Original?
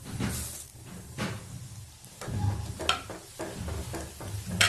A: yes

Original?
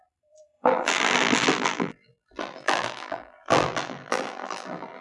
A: no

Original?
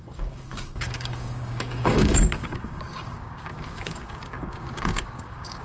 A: no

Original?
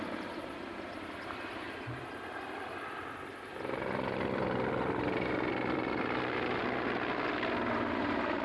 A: no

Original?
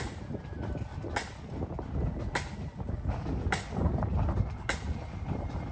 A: yes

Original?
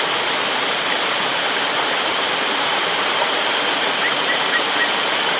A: yes